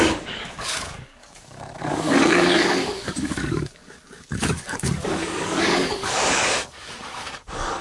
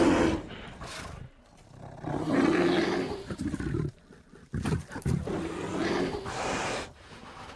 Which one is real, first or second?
second